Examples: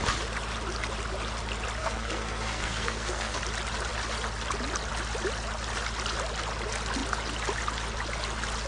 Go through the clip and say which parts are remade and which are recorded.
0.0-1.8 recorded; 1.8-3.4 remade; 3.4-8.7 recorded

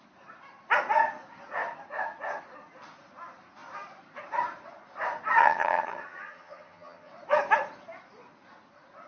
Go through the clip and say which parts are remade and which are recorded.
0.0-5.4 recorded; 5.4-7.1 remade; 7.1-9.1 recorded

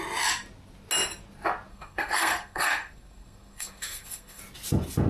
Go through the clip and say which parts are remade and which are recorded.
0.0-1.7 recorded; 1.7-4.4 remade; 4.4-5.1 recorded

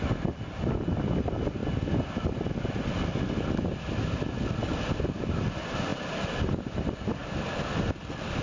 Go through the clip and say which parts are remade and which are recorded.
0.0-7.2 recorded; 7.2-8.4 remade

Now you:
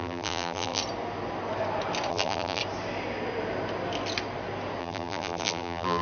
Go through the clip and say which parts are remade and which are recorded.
0.0-0.8 remade; 0.8-2.1 recorded; 2.1-2.6 remade; 2.6-4.8 recorded; 4.8-6.0 remade

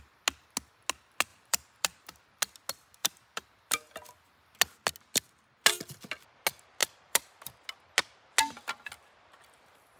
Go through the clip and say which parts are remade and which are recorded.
0.0-1.3 recorded; 1.3-2.1 remade; 2.1-3.0 recorded; 3.0-3.9 remade; 3.9-6.8 recorded; 6.8-7.4 remade; 7.4-10.0 recorded